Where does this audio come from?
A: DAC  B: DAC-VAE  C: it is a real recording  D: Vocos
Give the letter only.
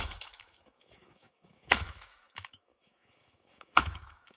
B